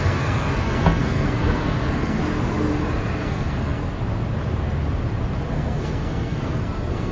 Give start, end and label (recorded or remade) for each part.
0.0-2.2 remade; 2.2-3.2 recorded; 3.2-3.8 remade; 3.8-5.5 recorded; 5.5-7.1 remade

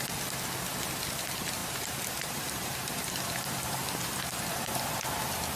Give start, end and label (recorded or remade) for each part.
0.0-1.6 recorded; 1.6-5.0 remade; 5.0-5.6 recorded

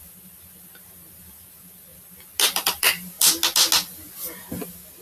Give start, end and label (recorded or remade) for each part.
0.0-5.0 recorded

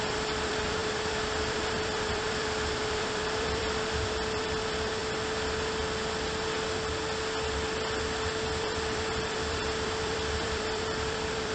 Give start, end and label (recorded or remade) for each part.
0.0-5.0 remade; 5.0-8.6 recorded; 8.6-11.5 remade

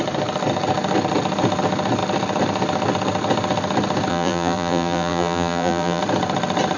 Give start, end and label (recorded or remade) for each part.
0.0-4.1 recorded; 4.1-6.0 remade; 6.0-6.8 recorded

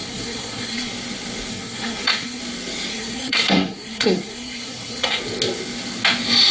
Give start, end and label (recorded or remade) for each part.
0.0-0.9 remade; 0.9-1.5 recorded; 1.5-2.4 remade; 2.4-2.9 recorded; 2.9-5.2 remade; 5.2-6.5 recorded

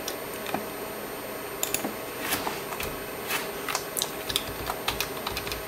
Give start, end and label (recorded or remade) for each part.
0.0-5.7 recorded

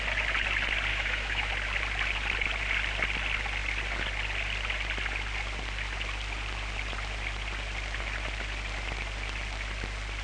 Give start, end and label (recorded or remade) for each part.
0.0-0.9 recorded; 0.9-1.5 remade; 1.5-10.2 recorded